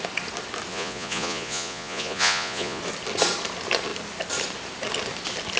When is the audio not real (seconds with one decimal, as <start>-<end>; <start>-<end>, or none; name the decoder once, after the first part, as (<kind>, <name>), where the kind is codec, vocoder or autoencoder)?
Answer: 0.7-2.8 (vocoder, Vocos)